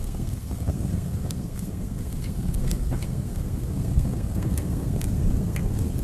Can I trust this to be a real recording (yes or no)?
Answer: no